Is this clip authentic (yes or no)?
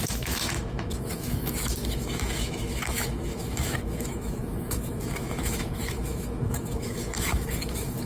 no